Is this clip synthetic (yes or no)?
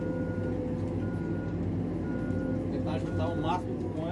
no